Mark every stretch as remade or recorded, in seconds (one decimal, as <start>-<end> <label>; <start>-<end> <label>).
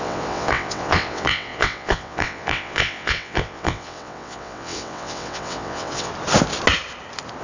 0.0-6.1 remade; 6.1-7.4 recorded